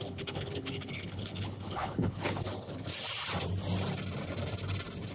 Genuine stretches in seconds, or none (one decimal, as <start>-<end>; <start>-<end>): 2.9-5.1